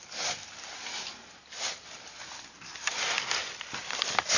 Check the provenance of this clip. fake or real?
real